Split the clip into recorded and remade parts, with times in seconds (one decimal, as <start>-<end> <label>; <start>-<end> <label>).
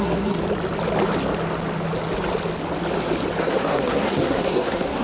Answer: 0.0-0.4 remade; 0.4-3.4 recorded; 3.4-5.0 remade